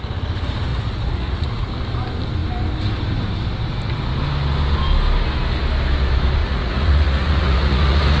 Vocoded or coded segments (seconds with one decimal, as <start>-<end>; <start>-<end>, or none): 0.7-1.7; 6.4-8.2